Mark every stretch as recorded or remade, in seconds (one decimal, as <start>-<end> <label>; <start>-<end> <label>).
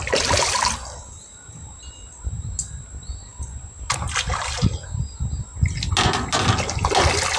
0.0-7.4 recorded